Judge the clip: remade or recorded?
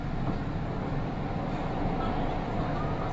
recorded